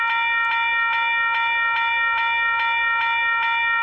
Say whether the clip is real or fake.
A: real